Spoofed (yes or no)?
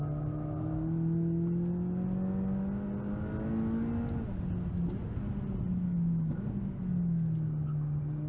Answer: no